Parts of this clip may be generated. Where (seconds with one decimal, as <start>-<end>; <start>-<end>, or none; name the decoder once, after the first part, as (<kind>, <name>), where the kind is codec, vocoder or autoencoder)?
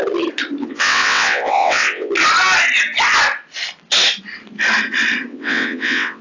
0.6-2.1 (vocoder, WaveNeXt); 5.3-6.2